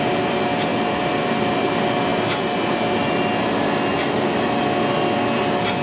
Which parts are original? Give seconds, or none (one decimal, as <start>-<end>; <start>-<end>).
0.0-5.8